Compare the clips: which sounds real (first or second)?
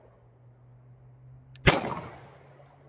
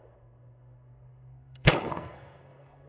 first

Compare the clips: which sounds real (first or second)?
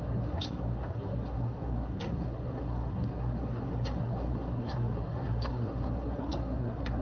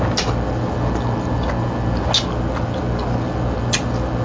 second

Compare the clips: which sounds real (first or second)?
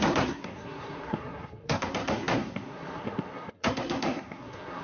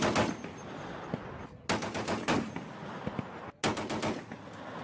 second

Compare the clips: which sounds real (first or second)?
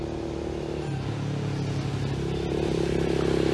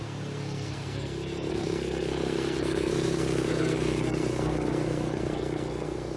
first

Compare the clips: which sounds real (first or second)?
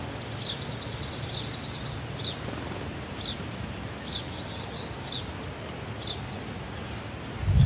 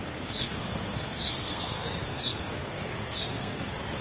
first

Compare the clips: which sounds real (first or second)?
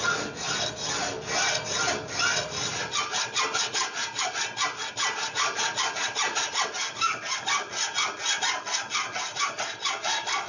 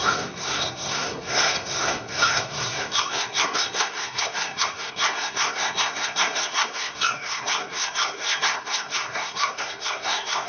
first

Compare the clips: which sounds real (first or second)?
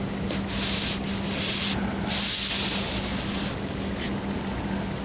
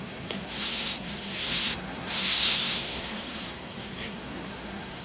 first